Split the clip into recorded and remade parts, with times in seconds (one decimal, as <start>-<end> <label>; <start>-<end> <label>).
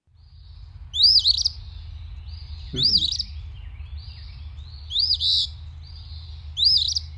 0.0-7.2 recorded